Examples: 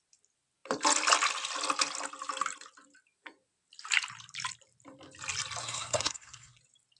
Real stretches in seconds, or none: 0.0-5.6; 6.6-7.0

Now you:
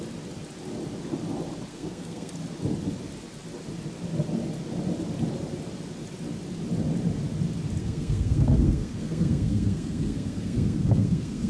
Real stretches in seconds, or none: 0.0-1.7; 2.3-7.8

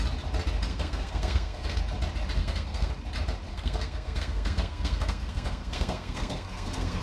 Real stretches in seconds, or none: 0.0-0.7; 1.8-2.4; 2.9-3.5

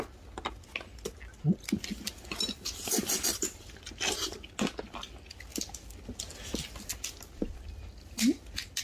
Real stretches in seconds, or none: 0.0-8.8

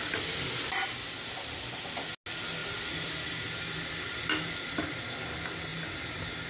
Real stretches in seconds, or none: 0.0-6.5